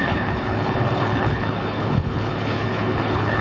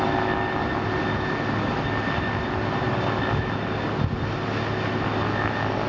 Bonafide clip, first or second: second